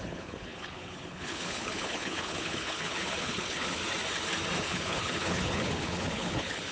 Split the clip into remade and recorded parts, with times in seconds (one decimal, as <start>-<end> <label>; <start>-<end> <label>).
0.0-3.8 remade; 3.8-4.6 recorded; 4.6-6.7 remade